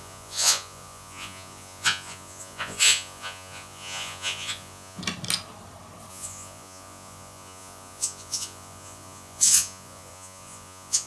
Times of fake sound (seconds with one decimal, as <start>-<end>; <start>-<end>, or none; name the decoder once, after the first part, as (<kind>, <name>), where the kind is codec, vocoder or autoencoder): 0.0-5.0 (vocoder, Vocos); 6.1-11.1